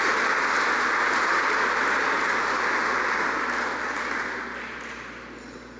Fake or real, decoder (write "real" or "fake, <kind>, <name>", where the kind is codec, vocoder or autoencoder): real